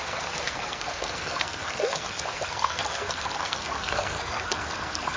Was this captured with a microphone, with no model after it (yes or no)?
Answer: no